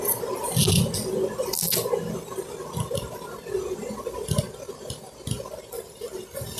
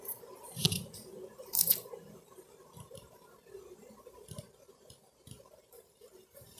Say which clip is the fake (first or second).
second